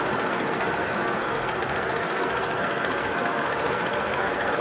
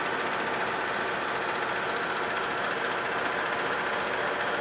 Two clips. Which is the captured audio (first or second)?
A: second